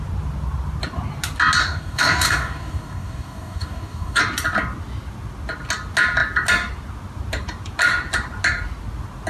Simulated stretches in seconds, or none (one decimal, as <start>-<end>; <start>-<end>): 1.6-4.2